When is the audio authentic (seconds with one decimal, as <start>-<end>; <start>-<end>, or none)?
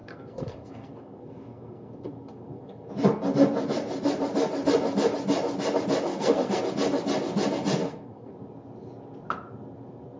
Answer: 2.9-6.1; 6.6-7.8; 8.3-10.2